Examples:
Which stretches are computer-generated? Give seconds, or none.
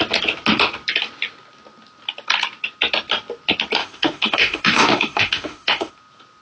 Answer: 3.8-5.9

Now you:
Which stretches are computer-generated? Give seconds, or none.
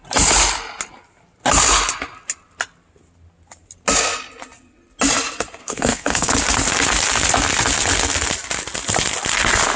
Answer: 5.6-6.3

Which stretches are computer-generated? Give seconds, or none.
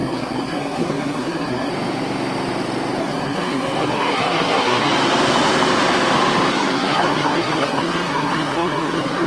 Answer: 0.0-1.7; 3.0-4.9; 6.5-9.3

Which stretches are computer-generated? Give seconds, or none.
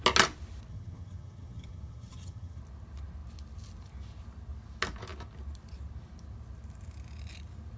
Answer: 0.7-2.6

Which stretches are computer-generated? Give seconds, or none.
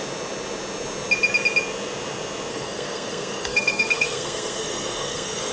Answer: 2.5-5.5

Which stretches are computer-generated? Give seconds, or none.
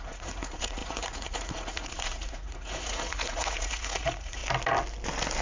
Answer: 0.0-4.4